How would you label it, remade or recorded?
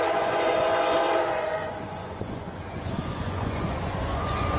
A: remade